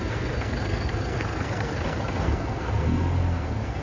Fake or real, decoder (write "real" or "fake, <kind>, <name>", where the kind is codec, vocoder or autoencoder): fake, codec, SNAC